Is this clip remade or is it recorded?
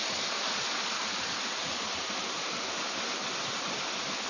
recorded